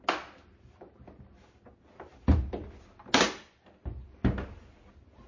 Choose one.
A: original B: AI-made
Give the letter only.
A